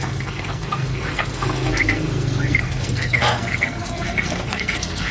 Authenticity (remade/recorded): remade